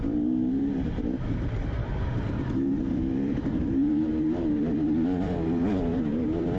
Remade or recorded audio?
remade